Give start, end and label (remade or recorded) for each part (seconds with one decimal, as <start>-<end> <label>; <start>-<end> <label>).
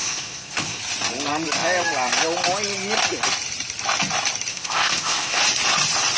0.0-0.8 remade; 0.8-4.5 recorded; 4.5-5.4 remade; 5.4-6.2 recorded